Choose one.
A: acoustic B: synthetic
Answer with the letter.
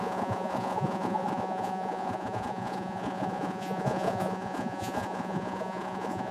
B